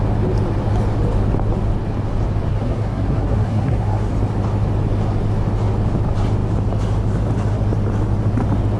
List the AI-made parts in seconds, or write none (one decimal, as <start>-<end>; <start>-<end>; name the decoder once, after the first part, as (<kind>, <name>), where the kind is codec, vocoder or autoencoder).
2.5-4.1 (codec, SNAC)